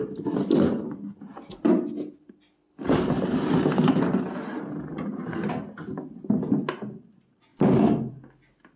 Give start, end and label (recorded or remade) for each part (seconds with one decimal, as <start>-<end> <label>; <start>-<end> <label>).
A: 0.0-8.8 recorded